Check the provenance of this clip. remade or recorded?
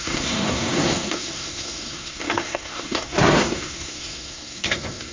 remade